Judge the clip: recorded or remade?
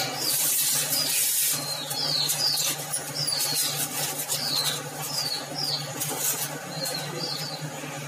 recorded